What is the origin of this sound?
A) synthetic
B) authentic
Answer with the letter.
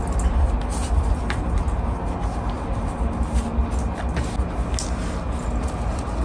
B